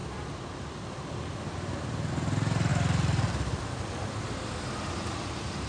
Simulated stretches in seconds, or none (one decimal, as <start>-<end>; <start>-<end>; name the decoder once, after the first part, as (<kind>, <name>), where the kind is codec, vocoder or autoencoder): none